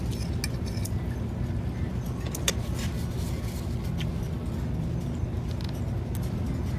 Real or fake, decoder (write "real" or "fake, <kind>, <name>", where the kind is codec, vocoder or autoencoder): real